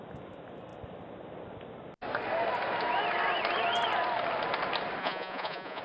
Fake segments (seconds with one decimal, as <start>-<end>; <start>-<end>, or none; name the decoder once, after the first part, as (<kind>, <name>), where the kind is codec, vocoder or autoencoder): 5.0-5.8 (vocoder, Vocos)